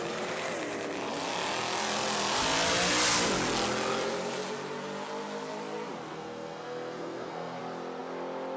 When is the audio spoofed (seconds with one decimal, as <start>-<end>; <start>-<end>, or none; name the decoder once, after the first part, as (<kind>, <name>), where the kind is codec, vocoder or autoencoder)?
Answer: 6.1-7.6 (codec, SNAC)